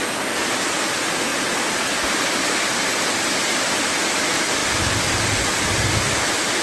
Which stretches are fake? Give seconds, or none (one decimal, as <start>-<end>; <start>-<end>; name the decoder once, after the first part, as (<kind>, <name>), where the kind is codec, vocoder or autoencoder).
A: 1.3-2.2 (vocoder, BigVGAN v2); 4.6-5.2